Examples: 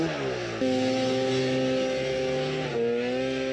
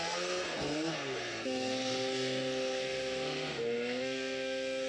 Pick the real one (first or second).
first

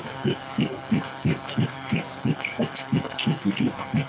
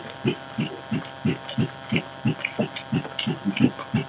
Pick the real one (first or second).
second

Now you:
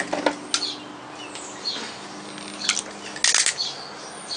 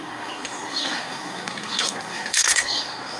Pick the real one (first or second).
first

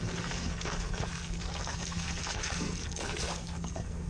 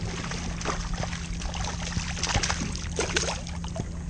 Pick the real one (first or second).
second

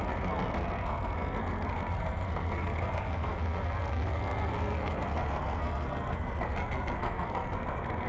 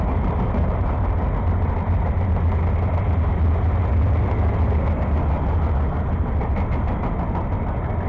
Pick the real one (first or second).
second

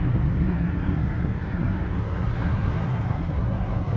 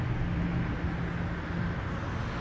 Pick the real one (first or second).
second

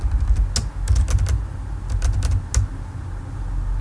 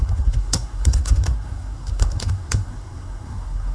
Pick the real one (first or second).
first